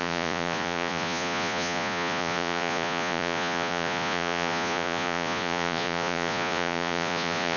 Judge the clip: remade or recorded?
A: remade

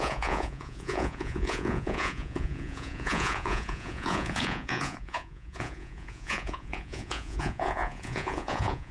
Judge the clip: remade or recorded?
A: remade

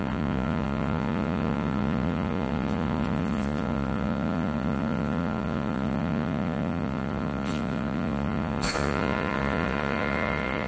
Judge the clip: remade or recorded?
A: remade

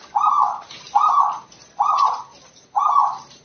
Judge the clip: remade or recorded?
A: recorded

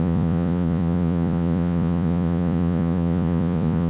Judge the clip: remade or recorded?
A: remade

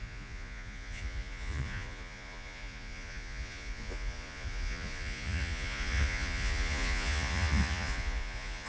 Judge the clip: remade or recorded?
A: remade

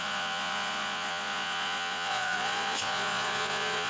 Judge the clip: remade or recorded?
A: remade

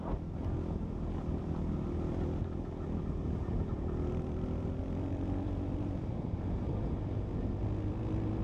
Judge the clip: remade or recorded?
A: recorded